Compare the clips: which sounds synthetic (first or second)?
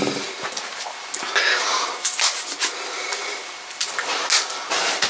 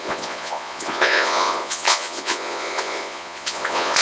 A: second